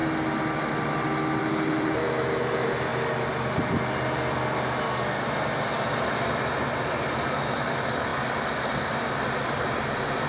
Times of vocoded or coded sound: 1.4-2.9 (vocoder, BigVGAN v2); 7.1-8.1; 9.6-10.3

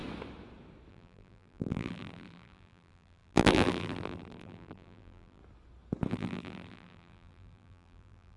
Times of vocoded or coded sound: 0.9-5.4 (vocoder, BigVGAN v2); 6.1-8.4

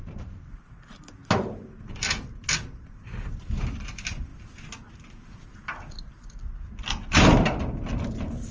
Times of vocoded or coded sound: 0.0-1.2 (vocoder, BigVGAN v2); 1.9-4.3; 6.8-8.5

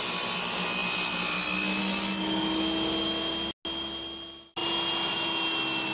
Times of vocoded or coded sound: none